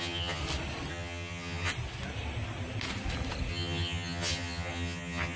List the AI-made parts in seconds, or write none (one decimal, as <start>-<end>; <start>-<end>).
0.0-0.4; 0.9-1.7; 3.5-5.4